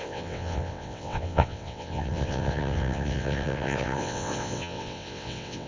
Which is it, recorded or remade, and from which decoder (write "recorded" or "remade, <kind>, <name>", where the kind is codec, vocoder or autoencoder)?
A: remade, vocoder, WaveNeXt